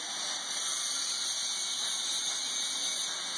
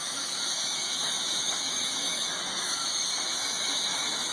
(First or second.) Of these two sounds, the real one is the first